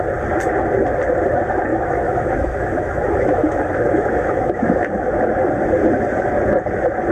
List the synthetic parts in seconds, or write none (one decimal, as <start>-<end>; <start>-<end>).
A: 1.7-5.1